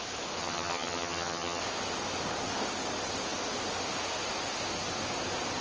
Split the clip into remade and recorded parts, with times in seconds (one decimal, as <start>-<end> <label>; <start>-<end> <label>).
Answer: 0.0-0.4 recorded; 0.4-1.6 remade; 1.6-5.6 recorded